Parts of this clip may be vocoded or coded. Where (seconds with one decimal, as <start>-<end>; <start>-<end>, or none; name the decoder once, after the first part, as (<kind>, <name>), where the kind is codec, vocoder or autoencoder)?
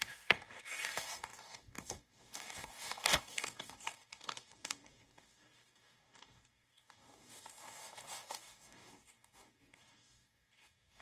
0.0-11.0 (codec, DAC)